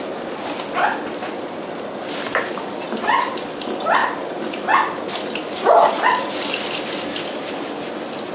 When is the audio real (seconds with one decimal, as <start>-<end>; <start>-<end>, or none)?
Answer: 0.0-8.3

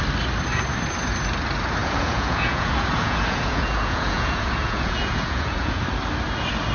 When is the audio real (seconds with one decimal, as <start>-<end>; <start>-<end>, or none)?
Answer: 0.0-1.8; 5.8-6.7

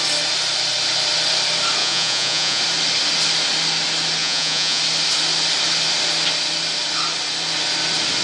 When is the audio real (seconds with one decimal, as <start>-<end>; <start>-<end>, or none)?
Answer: 0.0-1.8; 2.6-4.2; 4.8-8.2

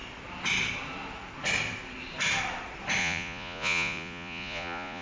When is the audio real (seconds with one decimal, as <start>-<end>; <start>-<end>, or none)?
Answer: 0.0-3.0